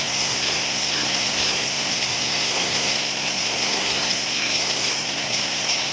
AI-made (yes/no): yes